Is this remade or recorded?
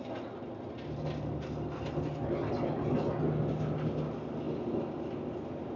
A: recorded